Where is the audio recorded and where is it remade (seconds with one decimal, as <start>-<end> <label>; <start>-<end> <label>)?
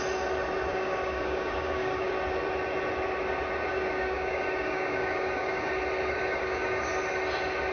0.0-0.7 recorded; 0.7-2.1 remade; 2.1-3.7 recorded; 3.7-5.7 remade; 5.7-6.2 recorded; 6.2-6.9 remade; 6.9-7.7 recorded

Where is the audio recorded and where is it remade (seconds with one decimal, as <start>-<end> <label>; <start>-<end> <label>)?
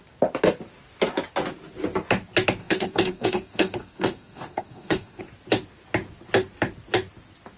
0.0-2.6 recorded; 2.6-5.2 remade; 5.2-7.6 recorded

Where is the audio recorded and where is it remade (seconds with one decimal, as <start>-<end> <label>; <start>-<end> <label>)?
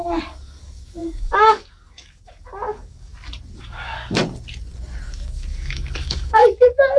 0.0-3.1 remade; 3.1-3.6 recorded; 3.6-4.2 remade; 4.2-5.1 recorded; 5.1-7.0 remade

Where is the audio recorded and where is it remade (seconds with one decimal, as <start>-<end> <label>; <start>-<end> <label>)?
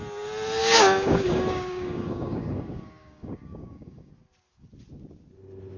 0.0-0.6 recorded; 0.6-4.1 remade; 4.1-5.8 recorded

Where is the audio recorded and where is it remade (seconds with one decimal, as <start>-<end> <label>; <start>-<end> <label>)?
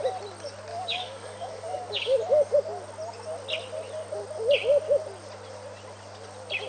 0.0-0.7 recorded; 0.7-2.2 remade; 2.2-6.7 recorded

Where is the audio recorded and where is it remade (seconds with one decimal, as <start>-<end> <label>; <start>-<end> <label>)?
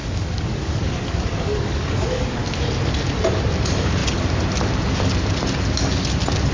0.0-2.4 remade; 2.4-6.5 recorded